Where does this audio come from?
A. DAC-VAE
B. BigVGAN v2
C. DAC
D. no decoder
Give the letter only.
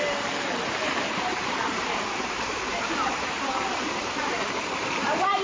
B